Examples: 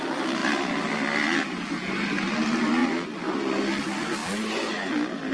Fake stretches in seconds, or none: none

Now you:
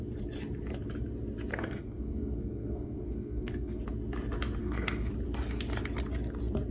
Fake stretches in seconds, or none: 1.5-3.8 (codec, SNAC); 4.6-5.1

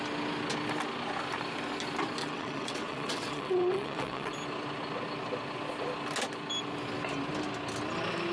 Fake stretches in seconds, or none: 2.2-4.3 (vocoder, WaveNeXt)

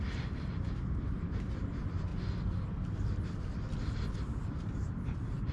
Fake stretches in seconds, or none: 0.0-2.1 (vocoder, BigVGAN v2); 4.5-5.5

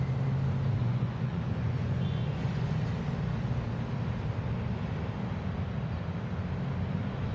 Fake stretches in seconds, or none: 0.8-2.7 (vocoder, Vocos)

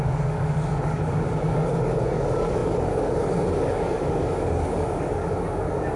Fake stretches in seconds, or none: 0.0-6.0 (codec, DAC)